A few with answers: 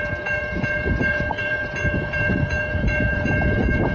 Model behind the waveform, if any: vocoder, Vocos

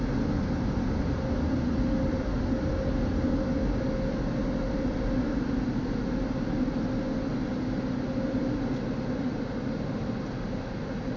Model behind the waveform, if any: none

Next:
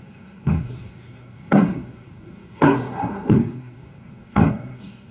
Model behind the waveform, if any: codec, SNAC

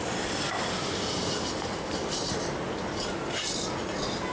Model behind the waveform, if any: none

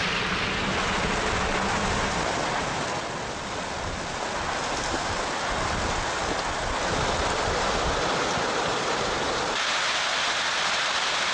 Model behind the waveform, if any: none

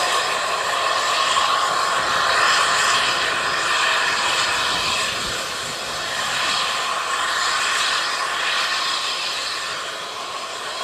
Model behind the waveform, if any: none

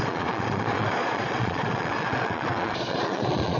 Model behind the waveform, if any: vocoder, Vocos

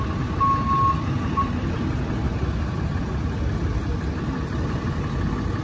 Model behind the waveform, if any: none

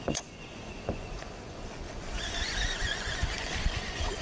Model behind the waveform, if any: vocoder, Vocos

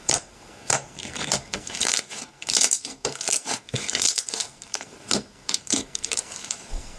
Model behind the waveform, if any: codec, SNAC